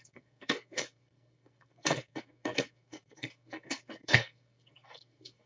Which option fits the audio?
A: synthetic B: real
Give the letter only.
A